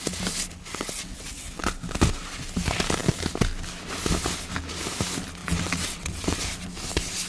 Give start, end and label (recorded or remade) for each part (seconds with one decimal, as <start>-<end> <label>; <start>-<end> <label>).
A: 0.0-0.7 recorded; 0.7-1.6 remade; 1.6-5.4 recorded; 5.4-6.4 remade; 6.4-7.3 recorded